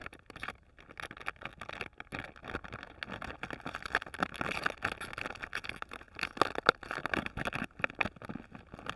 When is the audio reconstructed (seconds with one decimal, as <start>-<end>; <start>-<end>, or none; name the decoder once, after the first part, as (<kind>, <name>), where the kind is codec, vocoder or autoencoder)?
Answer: 0.0-0.7 (vocoder, BigVGAN v2)